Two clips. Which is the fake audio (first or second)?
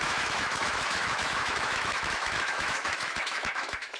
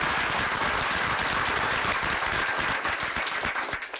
first